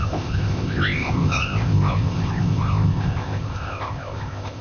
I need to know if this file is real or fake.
fake